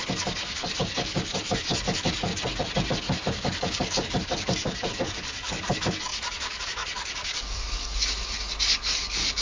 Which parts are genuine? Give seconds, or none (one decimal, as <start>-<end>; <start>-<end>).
2.3-2.9; 8.2-8.7